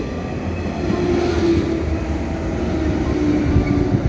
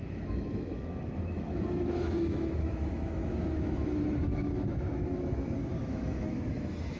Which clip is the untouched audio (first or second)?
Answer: first